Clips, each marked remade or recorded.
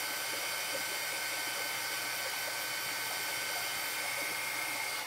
recorded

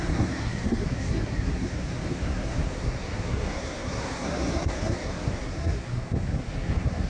remade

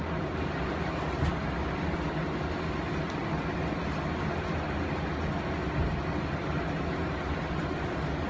recorded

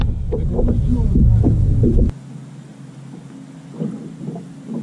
recorded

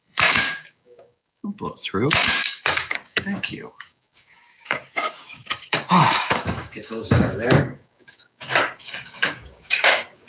remade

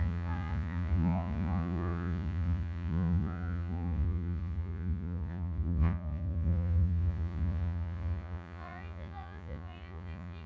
remade